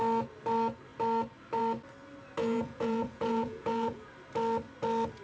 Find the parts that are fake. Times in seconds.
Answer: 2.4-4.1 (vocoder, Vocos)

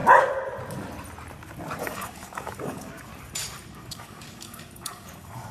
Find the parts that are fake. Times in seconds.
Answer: 1.8-3.1 (codec, DAC); 3.7-5.5

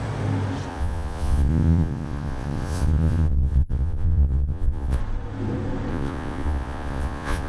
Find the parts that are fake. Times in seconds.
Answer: 0.7-5.0 (vocoder, Vocos); 5.9-7.5

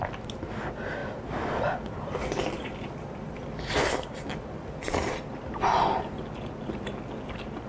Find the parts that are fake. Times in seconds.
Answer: 1.0-5.6 (vocoder, BigVGAN v2)

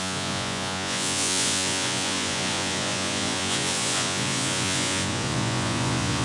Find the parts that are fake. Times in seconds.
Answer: 0.0-6.2 (vocoder, Vocos)

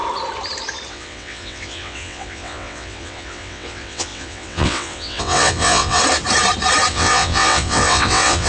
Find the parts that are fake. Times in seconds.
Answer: 0.9-6.0 (vocoder, WaveNeXt); 6.9-8.5

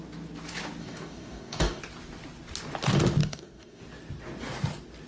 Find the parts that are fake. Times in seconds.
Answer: 0.8-1.8 (codec, DAC); 3.2-3.8

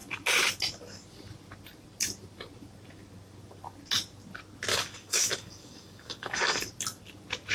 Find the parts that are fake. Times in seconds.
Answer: 4.7-6.7 (codec, DAC)